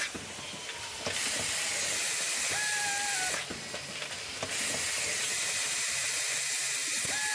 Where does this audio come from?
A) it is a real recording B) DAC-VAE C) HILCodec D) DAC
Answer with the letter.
A